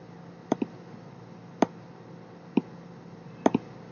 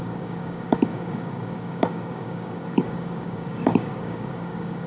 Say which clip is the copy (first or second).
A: second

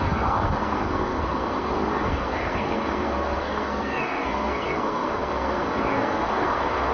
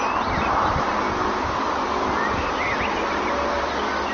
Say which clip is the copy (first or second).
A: first